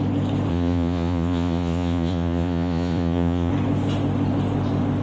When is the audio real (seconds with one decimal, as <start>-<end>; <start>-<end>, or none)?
0.0-0.5; 3.5-5.0